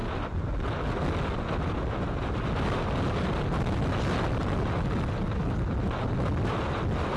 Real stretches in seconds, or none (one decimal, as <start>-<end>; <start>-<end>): 0.0-7.2